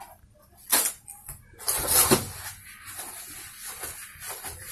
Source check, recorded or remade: recorded